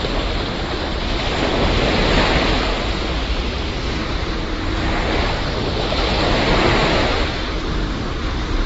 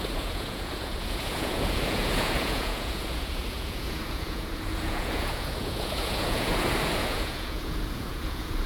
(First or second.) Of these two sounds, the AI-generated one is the second